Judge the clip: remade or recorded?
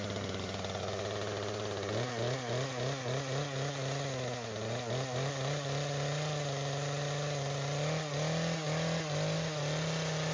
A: recorded